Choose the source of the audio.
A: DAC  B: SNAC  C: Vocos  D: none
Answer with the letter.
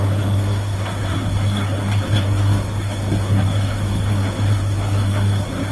B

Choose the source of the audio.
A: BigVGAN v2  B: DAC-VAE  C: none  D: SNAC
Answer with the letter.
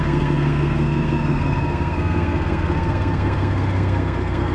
D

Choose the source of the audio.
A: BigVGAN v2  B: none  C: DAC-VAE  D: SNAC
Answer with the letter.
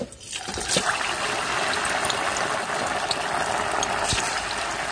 B